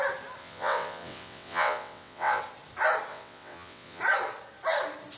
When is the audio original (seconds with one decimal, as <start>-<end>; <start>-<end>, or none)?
0.0-0.4; 2.4-3.1; 4.0-5.2